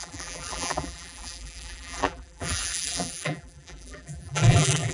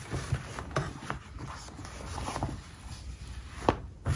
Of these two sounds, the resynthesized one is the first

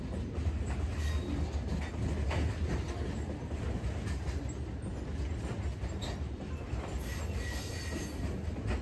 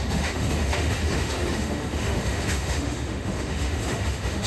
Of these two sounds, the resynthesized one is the second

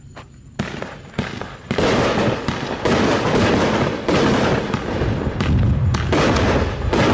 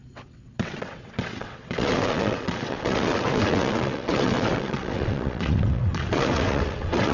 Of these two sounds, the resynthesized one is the second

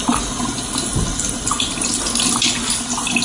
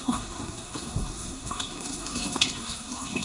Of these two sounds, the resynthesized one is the second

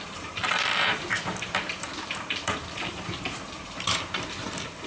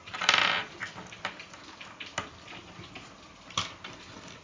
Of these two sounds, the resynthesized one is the first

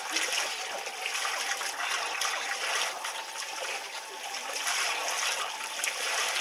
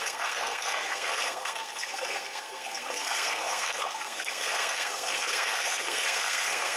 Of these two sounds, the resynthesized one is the second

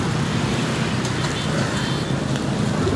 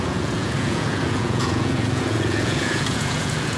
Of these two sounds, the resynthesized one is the second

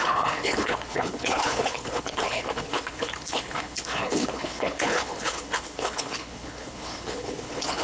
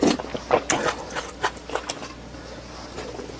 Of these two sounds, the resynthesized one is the first